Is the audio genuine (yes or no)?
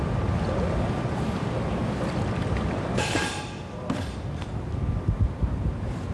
yes